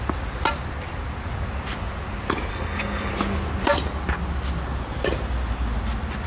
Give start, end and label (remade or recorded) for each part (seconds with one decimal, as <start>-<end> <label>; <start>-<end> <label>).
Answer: 0.0-2.5 recorded; 2.5-3.1 remade; 3.1-6.3 recorded